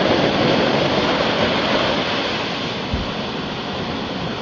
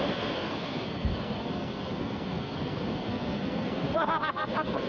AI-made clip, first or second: second